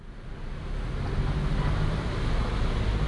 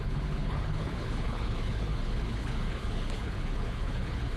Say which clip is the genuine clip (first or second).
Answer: first